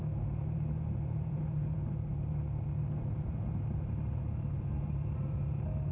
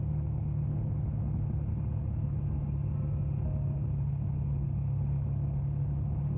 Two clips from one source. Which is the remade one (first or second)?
first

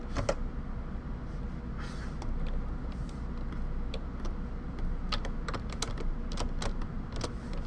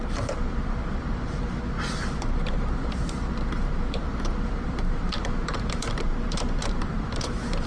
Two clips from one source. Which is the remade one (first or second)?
second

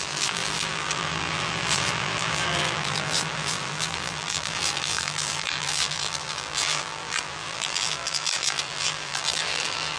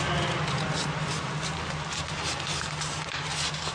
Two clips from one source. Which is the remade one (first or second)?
first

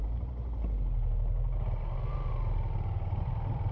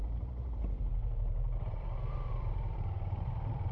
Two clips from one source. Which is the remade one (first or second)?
second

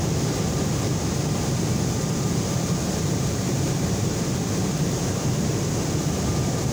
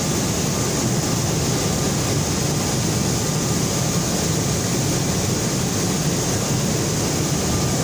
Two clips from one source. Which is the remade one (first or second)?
first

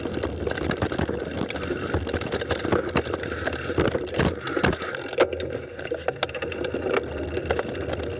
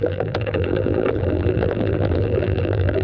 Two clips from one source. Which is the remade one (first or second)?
second